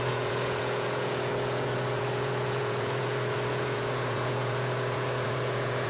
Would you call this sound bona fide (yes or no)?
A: no